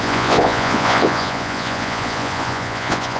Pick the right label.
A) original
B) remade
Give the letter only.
B